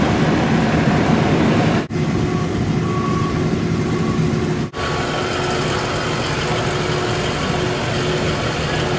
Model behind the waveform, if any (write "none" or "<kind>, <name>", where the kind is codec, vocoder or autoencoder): none